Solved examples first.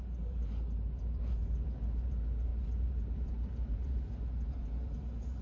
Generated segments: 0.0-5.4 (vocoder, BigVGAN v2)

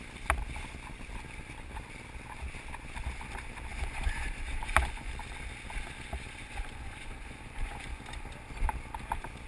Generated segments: 3.7-5.1 (vocoder, Vocos); 6.4-8.0

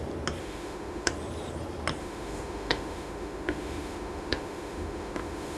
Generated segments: 0.4-1.1 (autoencoder, DAC-VAE); 2.0-5.6

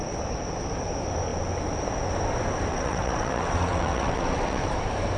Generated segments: 2.7-4.7 (vocoder, WaveNeXt)

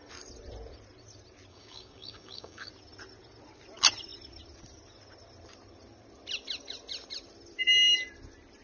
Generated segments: 1.5-2.7 (codec, DAC)

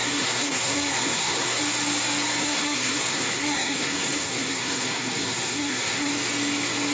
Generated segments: 0.0-1.6 (codec, SNAC); 2.4-6.1